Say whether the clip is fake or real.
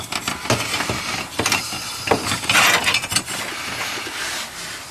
real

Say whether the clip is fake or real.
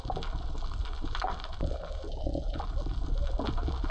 real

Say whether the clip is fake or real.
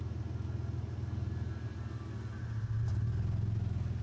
real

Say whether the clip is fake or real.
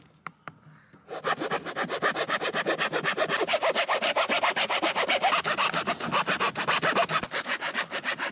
real